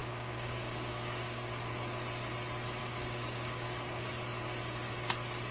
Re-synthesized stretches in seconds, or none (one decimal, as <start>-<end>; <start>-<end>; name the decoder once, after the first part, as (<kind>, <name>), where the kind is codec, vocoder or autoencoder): 0.0-1.7 (codec, DAC); 2.8-4.1